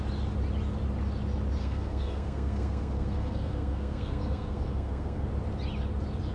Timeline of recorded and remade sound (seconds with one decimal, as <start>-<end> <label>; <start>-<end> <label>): 0.0-1.6 recorded; 1.6-5.3 remade; 5.3-6.3 recorded